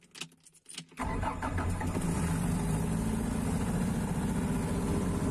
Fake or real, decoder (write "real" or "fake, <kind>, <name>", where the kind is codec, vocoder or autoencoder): real